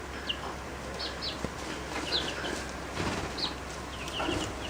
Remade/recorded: recorded